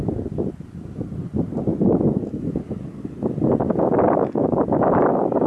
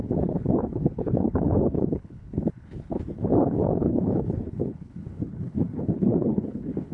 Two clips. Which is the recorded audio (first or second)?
first